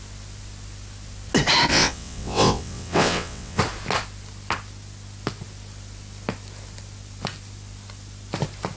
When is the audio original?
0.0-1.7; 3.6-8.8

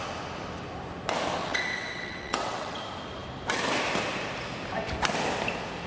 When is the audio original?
0.0-1.4; 2.8-5.9

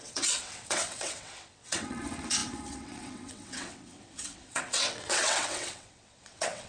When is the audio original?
none

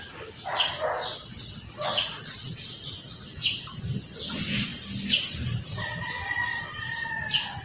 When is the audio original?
0.0-1.2; 2.5-7.6

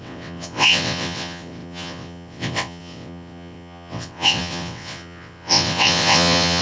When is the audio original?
none